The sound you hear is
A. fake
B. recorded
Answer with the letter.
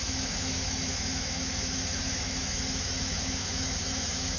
A